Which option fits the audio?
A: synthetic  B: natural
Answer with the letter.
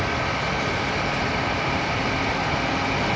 B